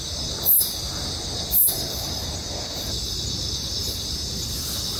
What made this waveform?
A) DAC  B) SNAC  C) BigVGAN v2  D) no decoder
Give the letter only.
D